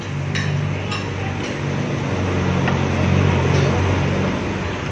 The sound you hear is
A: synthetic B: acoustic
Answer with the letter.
B